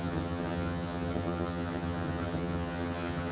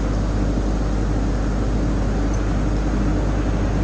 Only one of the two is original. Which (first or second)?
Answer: second